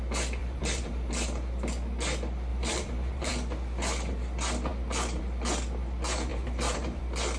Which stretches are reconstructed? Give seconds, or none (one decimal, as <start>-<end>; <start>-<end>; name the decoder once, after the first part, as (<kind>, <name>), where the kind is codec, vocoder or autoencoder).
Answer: 0.4-1.1 (vocoder, BigVGAN v2); 2.5-3.3; 6.3-7.0